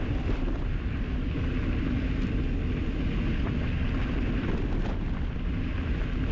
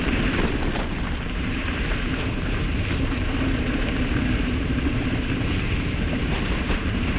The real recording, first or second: first